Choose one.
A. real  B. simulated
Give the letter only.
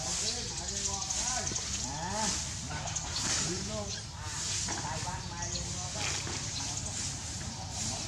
A